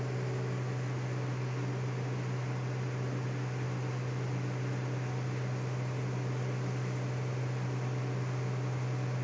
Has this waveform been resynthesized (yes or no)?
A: no